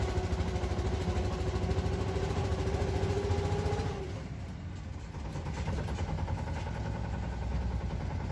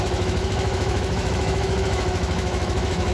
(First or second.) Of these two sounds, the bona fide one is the first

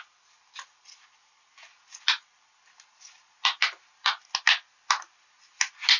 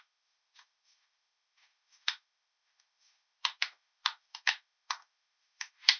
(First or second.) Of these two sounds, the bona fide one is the first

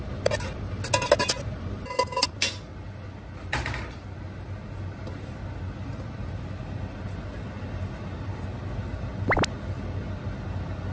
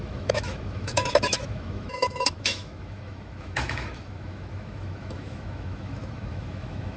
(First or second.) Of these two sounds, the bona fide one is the first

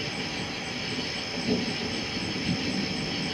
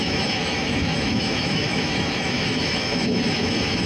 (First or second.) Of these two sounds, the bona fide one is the first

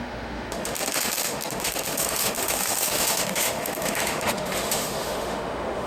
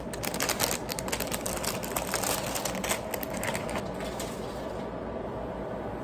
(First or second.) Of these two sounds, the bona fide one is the second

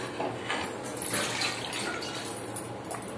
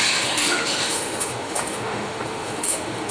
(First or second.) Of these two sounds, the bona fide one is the first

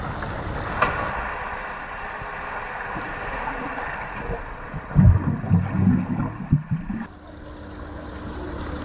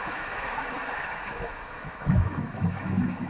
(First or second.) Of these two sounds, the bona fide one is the first